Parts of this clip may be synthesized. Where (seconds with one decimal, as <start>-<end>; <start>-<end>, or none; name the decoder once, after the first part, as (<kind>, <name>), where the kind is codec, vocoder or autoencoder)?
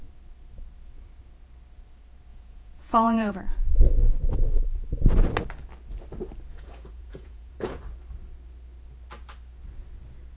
2.3-3.3 (vocoder, Vocos); 6.5-7.8